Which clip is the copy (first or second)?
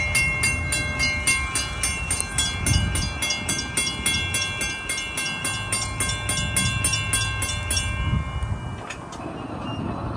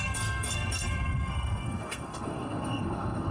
second